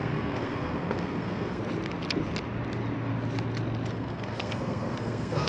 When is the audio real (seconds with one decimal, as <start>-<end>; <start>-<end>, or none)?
1.6-3.9